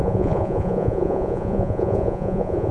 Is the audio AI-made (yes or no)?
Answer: yes